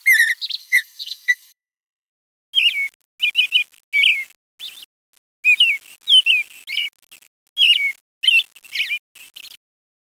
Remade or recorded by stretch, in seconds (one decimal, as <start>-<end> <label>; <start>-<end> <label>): 0.0-0.6 recorded; 0.6-2.1 remade; 2.1-10.2 recorded